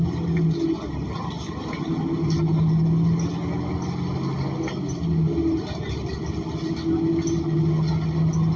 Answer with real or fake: real